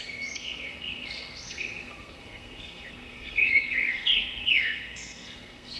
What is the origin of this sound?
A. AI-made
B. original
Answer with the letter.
A